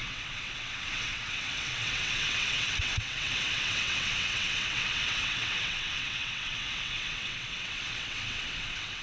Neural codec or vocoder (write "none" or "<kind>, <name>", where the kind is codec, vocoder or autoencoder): vocoder, WaveNeXt